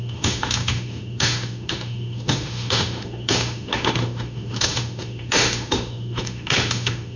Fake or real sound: fake